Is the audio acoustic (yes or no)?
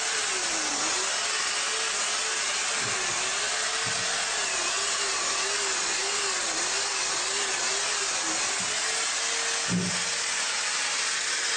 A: yes